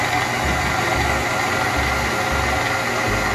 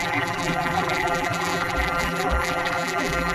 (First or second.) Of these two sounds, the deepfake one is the second